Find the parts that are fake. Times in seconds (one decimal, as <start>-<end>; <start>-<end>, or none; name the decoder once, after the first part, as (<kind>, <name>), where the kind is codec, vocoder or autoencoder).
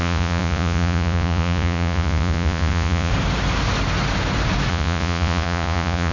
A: 0.0-3.1 (vocoder, Vocos); 4.7-6.1